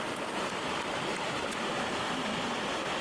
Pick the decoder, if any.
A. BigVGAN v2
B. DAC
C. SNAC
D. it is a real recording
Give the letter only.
D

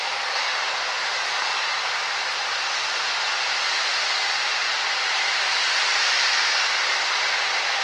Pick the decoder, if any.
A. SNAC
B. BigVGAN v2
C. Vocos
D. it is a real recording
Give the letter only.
D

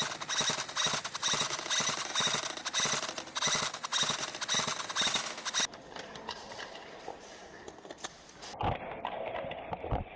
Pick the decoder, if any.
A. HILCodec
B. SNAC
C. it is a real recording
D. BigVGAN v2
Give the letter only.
C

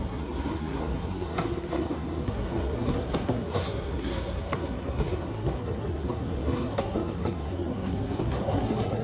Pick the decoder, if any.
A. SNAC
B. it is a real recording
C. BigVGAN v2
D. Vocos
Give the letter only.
A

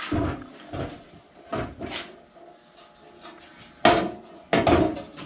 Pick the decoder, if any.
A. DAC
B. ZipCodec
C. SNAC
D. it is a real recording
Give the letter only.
D